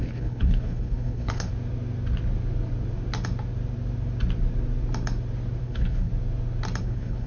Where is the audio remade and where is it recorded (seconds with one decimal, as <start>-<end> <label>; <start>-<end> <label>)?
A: 0.0-1.5 remade; 1.5-5.6 recorded; 5.6-6.1 remade; 6.1-6.8 recorded; 6.8-7.3 remade